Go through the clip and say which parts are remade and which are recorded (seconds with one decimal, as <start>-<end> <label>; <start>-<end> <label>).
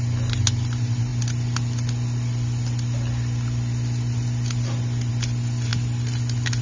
0.0-6.6 recorded